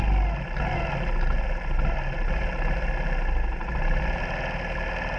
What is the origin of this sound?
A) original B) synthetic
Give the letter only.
A